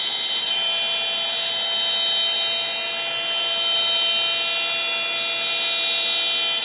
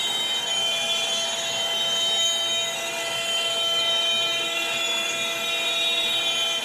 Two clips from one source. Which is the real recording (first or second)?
first